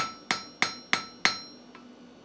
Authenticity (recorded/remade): recorded